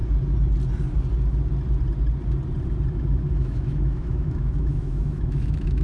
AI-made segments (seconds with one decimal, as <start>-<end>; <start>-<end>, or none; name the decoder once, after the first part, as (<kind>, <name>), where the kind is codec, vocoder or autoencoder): 2.9-5.8 (autoencoder, DAC-VAE)